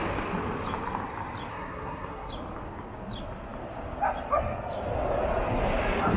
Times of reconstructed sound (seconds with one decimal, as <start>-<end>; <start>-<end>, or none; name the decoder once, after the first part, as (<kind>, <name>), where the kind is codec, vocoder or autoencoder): 1.5-2.3 (codec, SNAC)

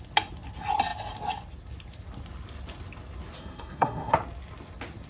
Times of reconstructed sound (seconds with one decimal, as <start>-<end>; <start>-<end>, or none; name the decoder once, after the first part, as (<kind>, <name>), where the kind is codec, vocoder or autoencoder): 3.4-4.1 (codec, SNAC)

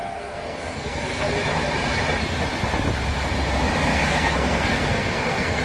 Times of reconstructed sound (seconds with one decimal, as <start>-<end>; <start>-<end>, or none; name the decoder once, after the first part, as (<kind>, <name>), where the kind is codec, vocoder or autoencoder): 0.0-1.3 (codec, SNAC); 3.9-5.6

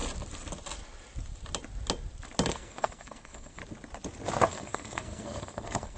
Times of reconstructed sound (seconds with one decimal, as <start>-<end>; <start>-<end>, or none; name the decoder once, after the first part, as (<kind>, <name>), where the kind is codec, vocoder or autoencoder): 2.5-3.6 (codec, SNAC); 4.5-6.0

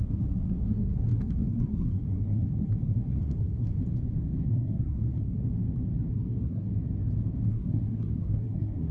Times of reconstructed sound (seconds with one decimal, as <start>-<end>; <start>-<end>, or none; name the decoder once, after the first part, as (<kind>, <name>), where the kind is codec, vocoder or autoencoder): 0.0-3.8 (codec, SNAC); 4.4-5.5; 6.1-6.7; 7.5-8.9